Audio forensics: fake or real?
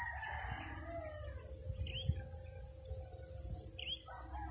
real